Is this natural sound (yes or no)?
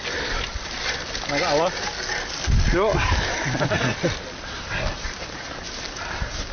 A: yes